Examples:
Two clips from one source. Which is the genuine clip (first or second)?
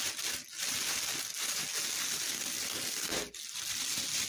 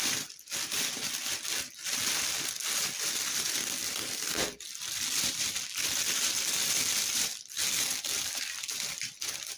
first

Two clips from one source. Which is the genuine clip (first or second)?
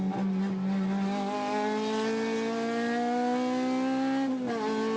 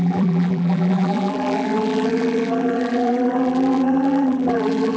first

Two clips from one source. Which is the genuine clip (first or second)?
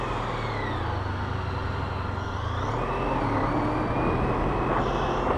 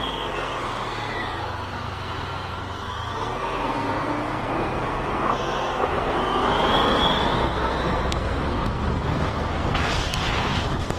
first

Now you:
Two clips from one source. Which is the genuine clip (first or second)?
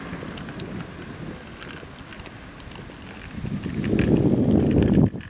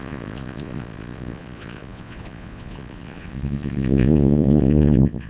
first